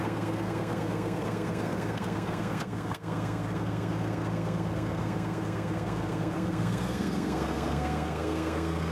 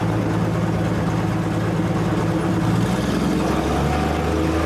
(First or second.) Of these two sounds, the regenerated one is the first